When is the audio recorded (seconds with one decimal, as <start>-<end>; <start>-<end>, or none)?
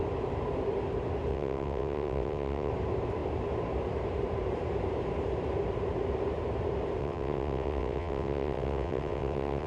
0.0-1.3; 2.7-7.0